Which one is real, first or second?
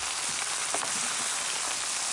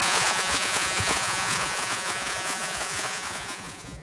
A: first